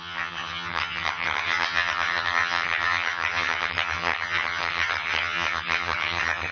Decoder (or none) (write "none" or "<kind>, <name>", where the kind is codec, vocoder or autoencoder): vocoder, HiFi-GAN